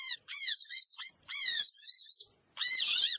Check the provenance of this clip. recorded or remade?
remade